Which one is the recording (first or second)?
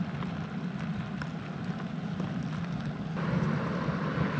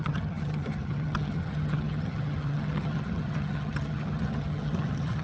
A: first